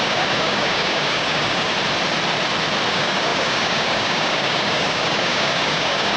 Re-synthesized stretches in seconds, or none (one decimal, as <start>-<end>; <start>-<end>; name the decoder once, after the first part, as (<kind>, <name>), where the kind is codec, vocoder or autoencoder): 0.0-1.7 (codec, DAC); 2.9-6.2